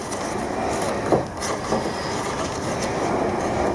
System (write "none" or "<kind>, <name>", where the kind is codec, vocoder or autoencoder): none